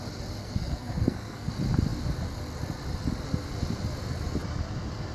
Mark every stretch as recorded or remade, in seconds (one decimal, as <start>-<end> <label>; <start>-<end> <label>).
0.0-0.4 recorded; 0.4-1.5 remade; 1.5-5.1 recorded